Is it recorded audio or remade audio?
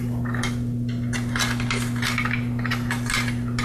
recorded